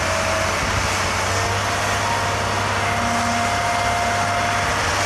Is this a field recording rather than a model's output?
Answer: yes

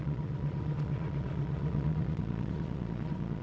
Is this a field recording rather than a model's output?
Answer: no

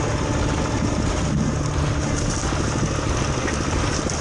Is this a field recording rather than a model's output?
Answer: yes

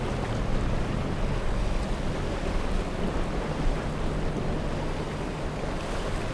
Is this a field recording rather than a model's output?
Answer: yes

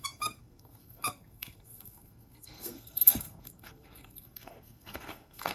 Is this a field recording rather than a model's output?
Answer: no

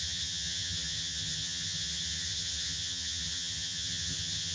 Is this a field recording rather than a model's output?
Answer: no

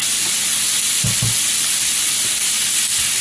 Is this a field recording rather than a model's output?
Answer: yes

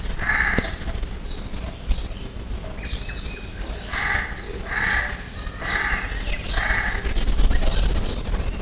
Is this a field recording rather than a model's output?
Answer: yes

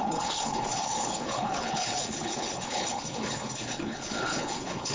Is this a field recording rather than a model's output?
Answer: no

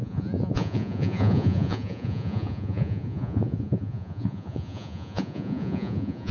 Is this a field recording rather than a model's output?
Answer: no